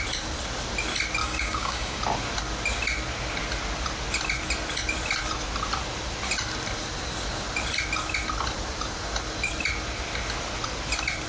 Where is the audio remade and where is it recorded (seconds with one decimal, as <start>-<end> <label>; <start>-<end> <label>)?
0.0-1.2 recorded; 1.2-2.0 remade; 2.0-11.3 recorded